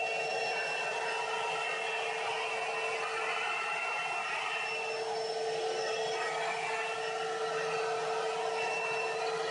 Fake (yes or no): no